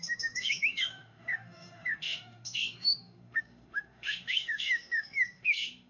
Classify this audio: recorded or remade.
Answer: remade